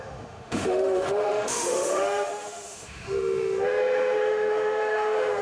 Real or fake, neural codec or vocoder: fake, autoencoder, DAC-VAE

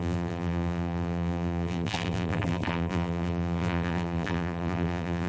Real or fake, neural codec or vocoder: fake, vocoder, BigVGAN v2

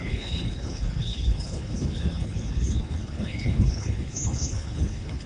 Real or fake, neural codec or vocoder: fake, codec, HILCodec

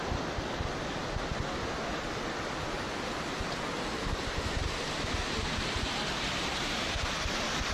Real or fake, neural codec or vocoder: real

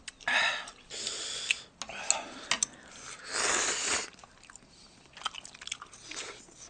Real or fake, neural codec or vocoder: real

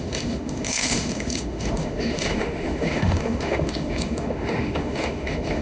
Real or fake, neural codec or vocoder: fake, autoencoder, DAC-VAE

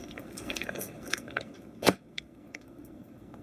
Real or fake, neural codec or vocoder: fake, codec, SNAC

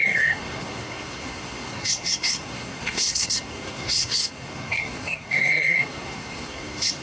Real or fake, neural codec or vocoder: fake, codec, SNAC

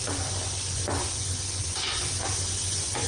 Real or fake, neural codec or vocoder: fake, vocoder, Vocos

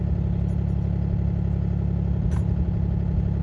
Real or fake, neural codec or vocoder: real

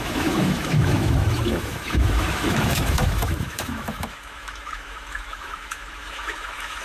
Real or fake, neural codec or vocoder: fake, autoencoder, DAC-VAE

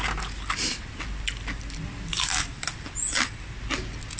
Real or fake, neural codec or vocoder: real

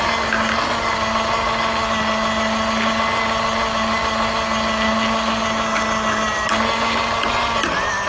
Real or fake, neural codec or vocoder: real